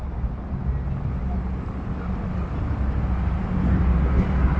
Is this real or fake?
real